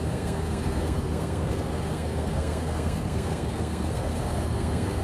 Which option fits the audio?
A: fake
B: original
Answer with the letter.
A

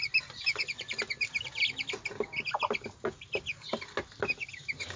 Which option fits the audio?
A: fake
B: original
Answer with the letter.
B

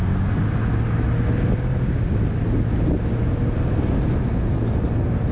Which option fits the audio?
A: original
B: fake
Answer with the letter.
A